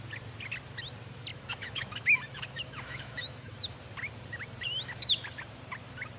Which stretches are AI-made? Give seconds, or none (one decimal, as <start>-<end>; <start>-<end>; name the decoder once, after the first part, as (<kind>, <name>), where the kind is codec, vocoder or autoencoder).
1.3-3.6 (autoencoder, DAC-VAE)